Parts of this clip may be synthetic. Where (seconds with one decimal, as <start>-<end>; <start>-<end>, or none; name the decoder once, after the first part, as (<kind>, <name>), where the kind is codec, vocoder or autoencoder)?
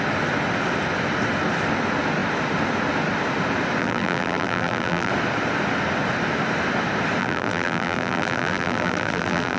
3.8-5.1 (vocoder, BigVGAN v2); 7.2-9.6